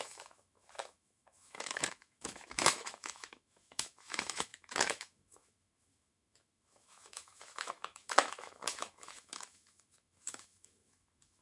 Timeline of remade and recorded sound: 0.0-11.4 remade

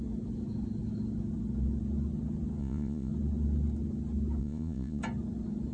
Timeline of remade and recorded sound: 0.0-2.6 recorded; 2.6-3.1 remade; 3.1-4.4 recorded; 4.4-5.0 remade; 5.0-5.7 recorded